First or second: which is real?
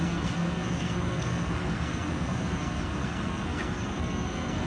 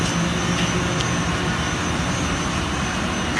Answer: second